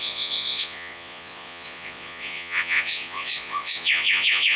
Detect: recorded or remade remade